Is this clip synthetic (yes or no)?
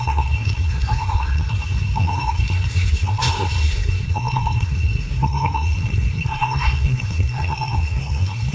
yes